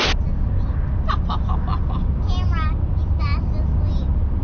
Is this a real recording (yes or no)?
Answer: yes